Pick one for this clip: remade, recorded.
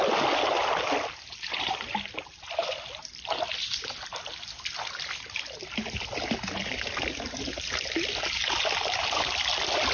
recorded